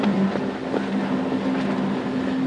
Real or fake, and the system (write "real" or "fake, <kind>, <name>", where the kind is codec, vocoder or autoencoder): real